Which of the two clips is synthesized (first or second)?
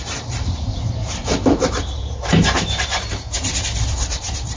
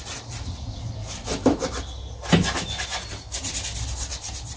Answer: first